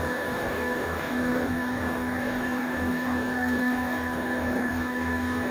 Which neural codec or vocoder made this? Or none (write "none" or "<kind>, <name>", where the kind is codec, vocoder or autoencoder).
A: codec, DAC